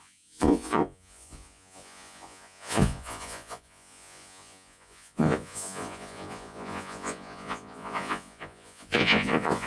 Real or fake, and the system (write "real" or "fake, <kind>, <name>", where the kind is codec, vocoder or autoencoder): fake, vocoder, Vocos